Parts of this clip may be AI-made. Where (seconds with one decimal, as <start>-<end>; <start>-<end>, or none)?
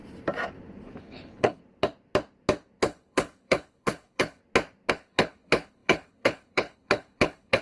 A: 1.0-1.6; 2.8-4.4; 4.9-7.6